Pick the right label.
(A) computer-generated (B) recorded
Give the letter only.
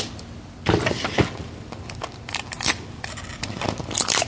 A